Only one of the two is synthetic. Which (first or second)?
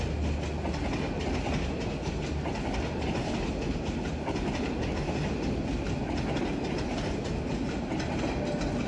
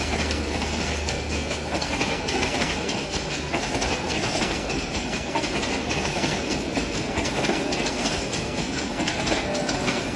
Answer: second